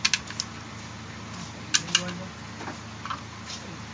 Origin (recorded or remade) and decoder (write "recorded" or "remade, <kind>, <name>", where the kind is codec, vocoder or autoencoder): recorded